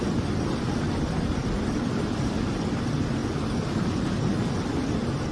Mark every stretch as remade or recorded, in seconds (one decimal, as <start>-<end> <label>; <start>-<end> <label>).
0.0-5.3 recorded